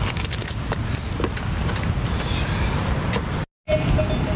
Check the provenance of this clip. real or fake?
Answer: real